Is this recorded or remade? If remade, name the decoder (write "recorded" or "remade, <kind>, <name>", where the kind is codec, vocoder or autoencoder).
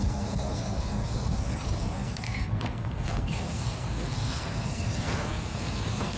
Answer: remade, codec, SNAC